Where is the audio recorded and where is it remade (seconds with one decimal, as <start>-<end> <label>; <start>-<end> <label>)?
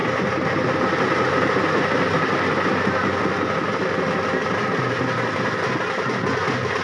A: 0.0-6.8 recorded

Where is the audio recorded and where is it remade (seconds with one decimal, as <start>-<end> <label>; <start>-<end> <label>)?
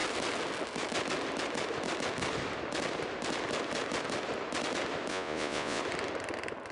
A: 0.0-5.1 recorded; 5.1-5.8 remade; 5.8-6.7 recorded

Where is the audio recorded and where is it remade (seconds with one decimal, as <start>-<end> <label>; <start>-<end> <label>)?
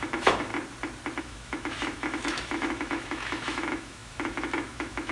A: 0.0-0.5 remade; 0.5-1.2 recorded; 1.2-5.1 remade